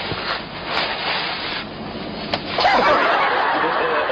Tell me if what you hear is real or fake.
real